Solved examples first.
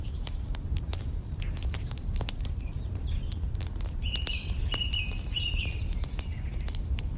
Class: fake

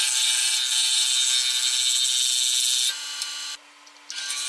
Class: real